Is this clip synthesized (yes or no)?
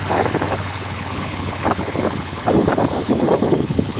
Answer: yes